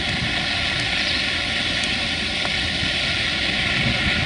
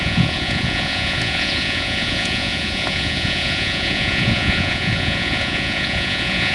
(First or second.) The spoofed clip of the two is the second